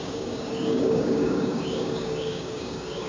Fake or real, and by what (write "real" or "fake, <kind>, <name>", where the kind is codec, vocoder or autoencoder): fake, codec, DAC